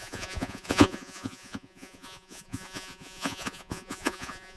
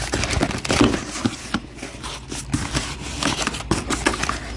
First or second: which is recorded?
second